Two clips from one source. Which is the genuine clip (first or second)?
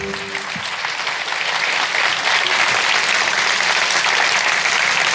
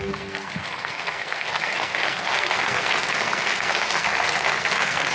first